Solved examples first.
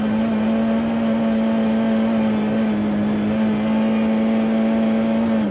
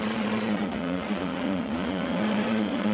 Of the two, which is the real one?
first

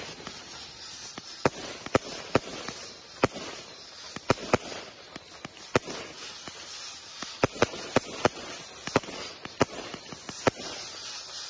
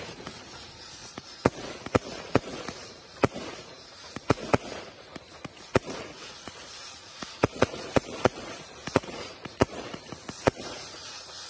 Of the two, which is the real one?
first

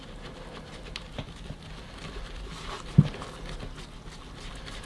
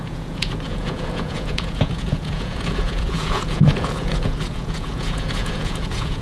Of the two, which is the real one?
first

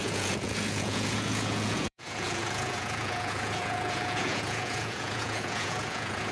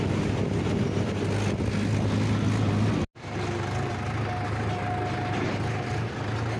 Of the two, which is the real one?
second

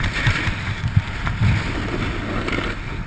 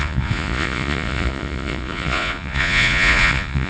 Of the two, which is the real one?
first